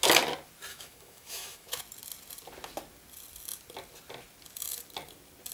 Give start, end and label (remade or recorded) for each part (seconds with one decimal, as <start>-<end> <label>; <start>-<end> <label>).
0.0-0.7 recorded; 0.7-1.8 remade; 1.8-5.5 recorded